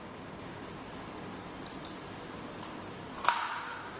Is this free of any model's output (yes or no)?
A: yes